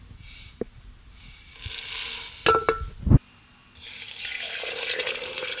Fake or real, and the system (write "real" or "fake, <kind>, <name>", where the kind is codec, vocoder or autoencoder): real